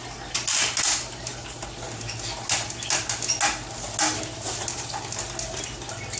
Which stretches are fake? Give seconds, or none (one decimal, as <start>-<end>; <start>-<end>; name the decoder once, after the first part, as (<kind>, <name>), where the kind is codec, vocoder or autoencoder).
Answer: none

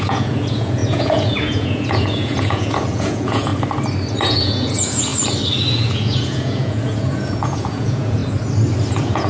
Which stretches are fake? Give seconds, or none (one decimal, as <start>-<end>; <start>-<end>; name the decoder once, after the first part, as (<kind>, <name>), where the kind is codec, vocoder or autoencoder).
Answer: 0.0-3.5 (vocoder, Vocos); 4.1-5.1; 5.7-8.2; 8.9-9.3

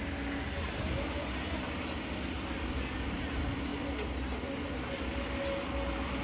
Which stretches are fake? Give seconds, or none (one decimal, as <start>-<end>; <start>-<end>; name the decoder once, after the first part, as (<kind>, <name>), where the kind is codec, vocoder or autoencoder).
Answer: none

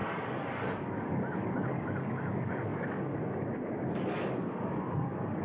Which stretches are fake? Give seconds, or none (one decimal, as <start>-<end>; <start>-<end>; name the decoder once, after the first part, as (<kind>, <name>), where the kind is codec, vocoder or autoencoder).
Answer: 0.0-5.4 (codec, DAC)

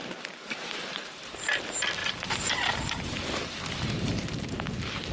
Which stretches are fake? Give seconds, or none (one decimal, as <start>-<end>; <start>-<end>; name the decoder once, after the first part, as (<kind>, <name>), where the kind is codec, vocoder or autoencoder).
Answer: 0.0-1.4 (vocoder, BigVGAN v2); 2.0-5.1

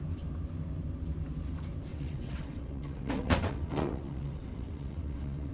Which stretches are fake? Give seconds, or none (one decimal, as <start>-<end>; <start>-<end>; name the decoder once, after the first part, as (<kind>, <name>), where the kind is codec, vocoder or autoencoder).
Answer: 1.9-5.5 (vocoder, WaveNeXt)

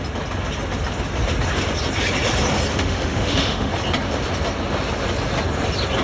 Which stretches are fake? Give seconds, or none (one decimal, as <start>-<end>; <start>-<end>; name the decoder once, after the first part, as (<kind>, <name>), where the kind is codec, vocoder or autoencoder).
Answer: 2.7-3.7 (autoencoder, DAC-VAE)